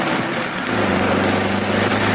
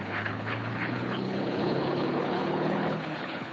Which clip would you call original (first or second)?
first